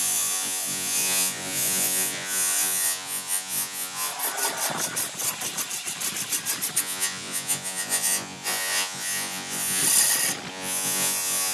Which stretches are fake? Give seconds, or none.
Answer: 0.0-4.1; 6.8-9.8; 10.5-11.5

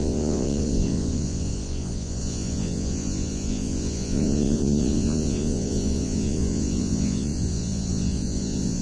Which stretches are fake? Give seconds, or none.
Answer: 0.0-8.8

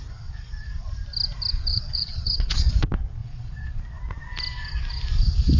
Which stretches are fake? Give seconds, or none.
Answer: 1.7-2.7; 3.2-3.8

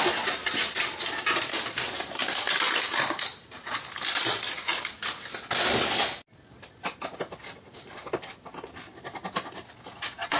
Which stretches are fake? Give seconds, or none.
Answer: none

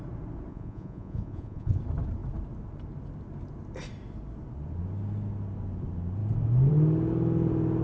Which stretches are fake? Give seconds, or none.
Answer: 0.5-1.8

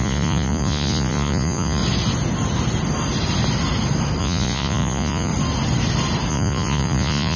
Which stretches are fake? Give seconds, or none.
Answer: 0.0-1.8; 4.2-5.3; 6.3-7.4

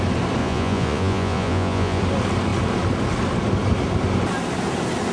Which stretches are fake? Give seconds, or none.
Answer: 0.4-2.0